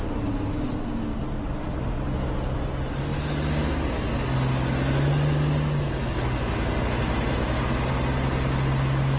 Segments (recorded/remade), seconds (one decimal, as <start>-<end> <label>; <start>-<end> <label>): 0.0-9.2 recorded